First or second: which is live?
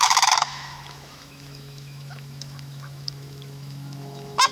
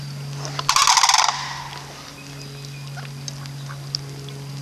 second